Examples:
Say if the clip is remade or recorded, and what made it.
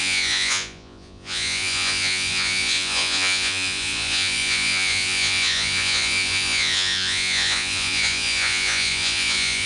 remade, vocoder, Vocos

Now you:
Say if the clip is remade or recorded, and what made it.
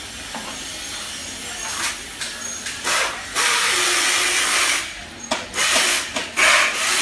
recorded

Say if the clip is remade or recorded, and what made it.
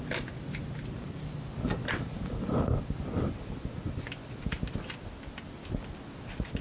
recorded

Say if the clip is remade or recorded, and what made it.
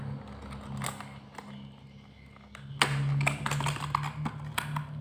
recorded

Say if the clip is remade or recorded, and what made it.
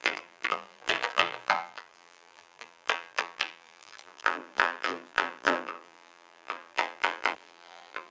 remade, vocoder, BigVGAN v2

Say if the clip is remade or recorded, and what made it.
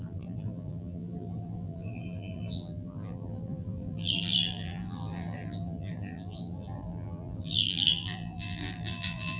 remade, vocoder, BigVGAN v2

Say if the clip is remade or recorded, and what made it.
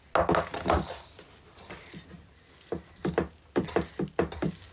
recorded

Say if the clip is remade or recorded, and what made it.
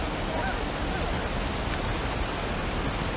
recorded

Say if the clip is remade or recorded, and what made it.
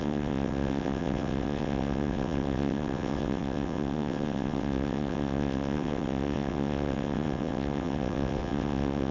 remade, vocoder, WaveNeXt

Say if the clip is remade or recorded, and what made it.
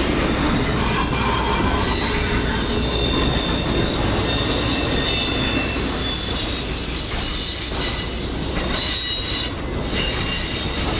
recorded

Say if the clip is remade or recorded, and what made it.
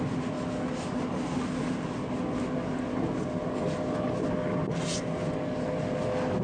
recorded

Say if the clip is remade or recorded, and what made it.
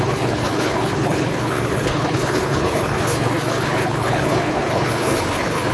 remade, codec, HILCodec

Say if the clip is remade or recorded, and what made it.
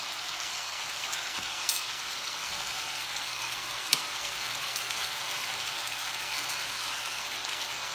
remade, codec, SNAC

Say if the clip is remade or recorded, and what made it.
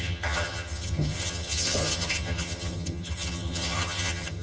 remade, vocoder, HiFi-GAN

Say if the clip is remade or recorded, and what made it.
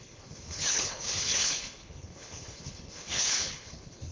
remade, codec, HILCodec